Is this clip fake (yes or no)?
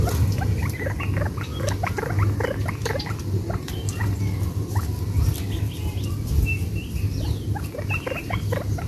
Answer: no